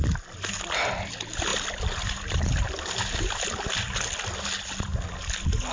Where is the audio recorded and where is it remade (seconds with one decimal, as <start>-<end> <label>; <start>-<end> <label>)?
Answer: 0.0-5.7 recorded